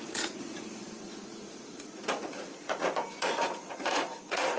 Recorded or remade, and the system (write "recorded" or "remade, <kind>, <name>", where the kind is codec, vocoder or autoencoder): remade, vocoder, Vocos